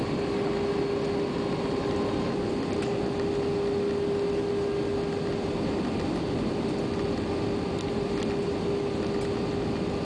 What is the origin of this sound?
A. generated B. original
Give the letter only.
B